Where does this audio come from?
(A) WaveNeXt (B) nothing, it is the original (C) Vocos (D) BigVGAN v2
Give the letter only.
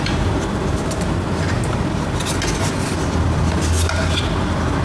B